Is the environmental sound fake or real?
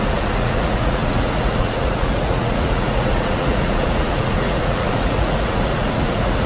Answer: fake